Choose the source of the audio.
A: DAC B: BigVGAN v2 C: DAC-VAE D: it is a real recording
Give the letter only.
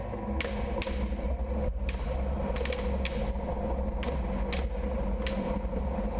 D